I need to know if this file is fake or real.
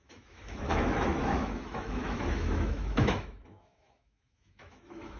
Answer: fake